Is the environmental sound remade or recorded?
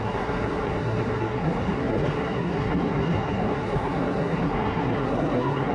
remade